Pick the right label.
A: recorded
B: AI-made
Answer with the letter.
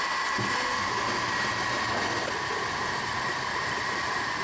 A